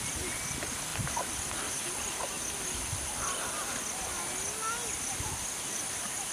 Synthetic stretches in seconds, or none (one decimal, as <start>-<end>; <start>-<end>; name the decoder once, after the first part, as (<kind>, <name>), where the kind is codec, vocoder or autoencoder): none